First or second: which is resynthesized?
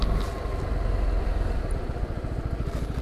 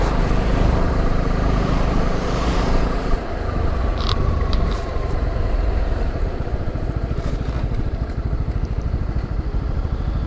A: second